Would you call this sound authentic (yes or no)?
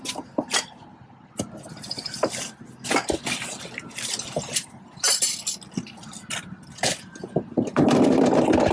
yes